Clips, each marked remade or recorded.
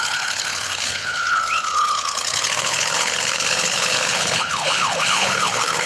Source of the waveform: remade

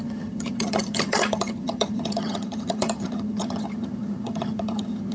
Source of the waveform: remade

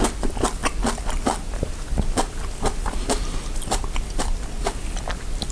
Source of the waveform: recorded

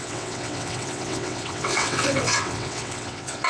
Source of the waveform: remade